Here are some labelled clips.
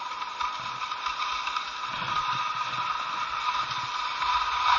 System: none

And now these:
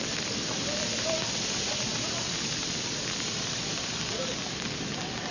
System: none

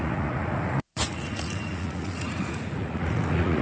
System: vocoder, Vocos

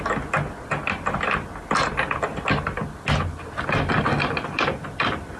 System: none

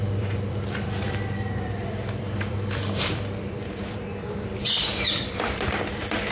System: vocoder, BigVGAN v2